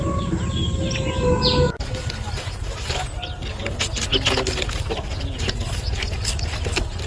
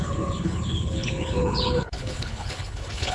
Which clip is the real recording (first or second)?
first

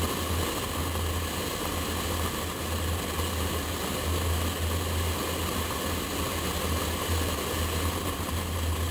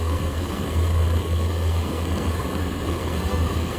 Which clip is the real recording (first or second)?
first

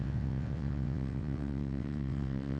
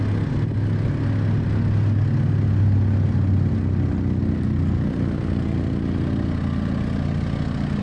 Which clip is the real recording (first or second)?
second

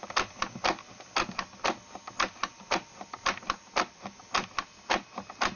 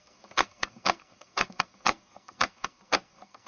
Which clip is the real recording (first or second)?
first